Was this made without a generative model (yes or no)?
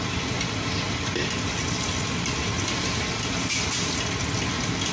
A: yes